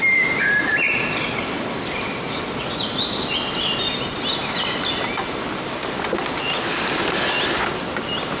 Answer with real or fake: real